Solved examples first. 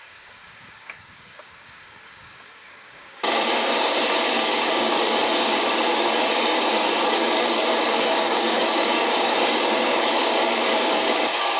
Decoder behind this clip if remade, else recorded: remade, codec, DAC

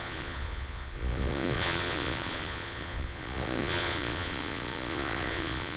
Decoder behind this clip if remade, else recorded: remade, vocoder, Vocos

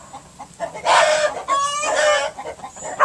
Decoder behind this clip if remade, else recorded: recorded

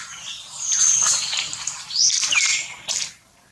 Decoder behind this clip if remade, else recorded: recorded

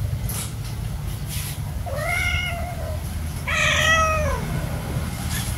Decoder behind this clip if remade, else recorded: recorded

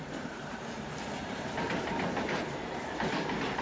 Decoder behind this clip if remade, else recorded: remade, vocoder, BigVGAN v2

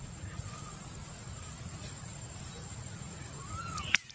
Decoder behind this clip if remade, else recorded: remade, vocoder, Vocos